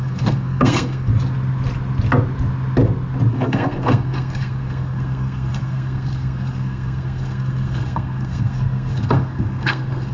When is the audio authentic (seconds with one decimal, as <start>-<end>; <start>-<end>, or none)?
1.1-3.3